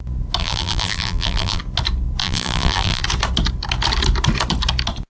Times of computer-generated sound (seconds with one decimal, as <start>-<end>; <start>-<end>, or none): 0.4-1.6; 2.2-3.0

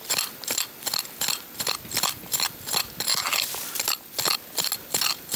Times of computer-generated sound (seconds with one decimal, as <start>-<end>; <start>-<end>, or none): none